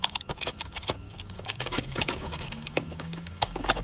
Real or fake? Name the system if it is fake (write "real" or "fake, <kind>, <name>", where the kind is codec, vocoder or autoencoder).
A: fake, codec, DAC